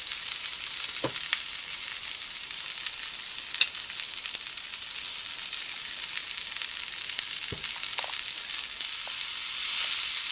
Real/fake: real